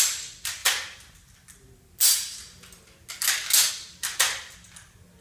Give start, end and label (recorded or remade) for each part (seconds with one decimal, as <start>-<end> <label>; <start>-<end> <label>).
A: 0.0-5.2 recorded